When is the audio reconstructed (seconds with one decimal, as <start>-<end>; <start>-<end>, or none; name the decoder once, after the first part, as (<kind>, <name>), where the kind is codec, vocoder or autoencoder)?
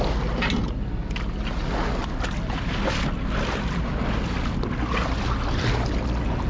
none